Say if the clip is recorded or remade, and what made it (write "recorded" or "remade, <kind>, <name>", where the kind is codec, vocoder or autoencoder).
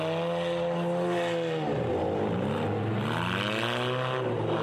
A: recorded